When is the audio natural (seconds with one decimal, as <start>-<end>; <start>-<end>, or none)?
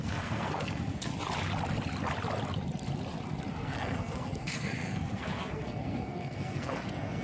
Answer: 1.1-3.5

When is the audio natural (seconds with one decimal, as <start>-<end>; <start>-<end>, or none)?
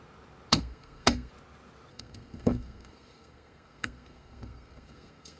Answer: 0.0-0.5; 1.3-1.9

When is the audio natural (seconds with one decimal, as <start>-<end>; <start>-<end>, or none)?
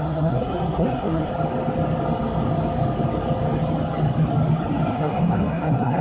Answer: 1.3-4.9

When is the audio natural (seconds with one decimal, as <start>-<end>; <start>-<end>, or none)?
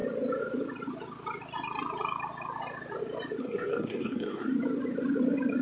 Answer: 0.0-3.4; 4.5-5.6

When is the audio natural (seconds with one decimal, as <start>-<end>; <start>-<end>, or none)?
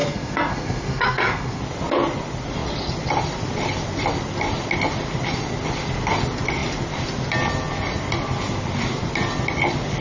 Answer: 1.6-10.0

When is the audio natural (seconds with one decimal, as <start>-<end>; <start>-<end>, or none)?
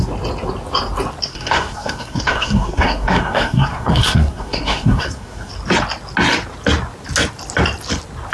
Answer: 0.0-1.3; 5.5-8.3